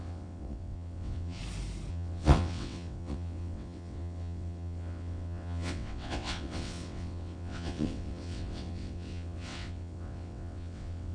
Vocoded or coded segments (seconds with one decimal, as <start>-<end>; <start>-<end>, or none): 0.0-1.4; 1.9-11.1